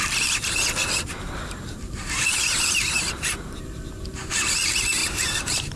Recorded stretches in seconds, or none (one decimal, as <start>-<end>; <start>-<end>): 0.0-0.8; 3.6-5.0